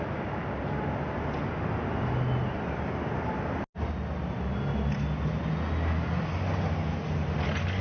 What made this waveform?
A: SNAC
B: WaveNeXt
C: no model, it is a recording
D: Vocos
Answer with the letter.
C